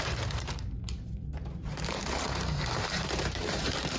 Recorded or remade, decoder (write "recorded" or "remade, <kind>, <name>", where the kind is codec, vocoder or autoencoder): remade, vocoder, BigVGAN v2